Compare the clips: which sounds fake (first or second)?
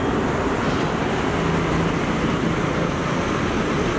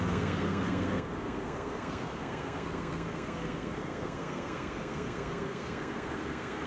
second